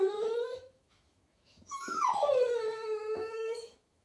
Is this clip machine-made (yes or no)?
yes